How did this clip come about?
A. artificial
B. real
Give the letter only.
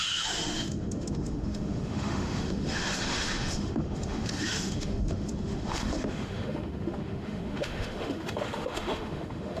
A